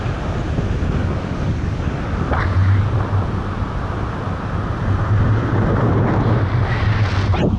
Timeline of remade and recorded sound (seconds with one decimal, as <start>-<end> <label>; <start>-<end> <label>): 0.0-1.0 recorded; 1.0-2.2 remade; 2.2-7.6 recorded